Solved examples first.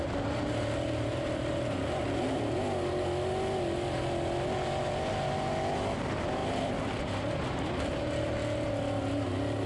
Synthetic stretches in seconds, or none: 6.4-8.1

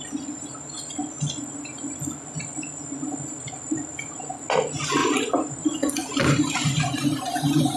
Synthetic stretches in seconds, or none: 5.0-5.6; 6.0-7.2

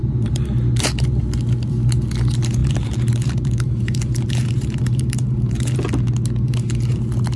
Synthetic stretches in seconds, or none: 0.0-1.2; 2.6-5.8